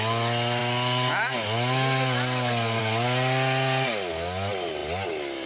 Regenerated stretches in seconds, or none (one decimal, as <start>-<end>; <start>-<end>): none